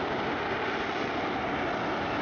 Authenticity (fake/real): real